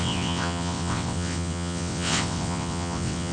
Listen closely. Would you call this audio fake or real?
fake